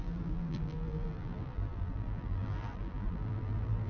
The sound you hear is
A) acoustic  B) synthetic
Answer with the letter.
B